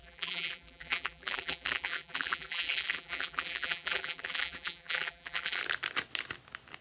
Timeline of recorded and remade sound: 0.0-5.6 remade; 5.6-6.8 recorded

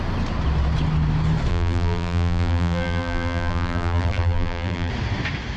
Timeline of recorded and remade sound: 0.0-1.5 recorded; 1.5-4.9 remade; 4.9-5.6 recorded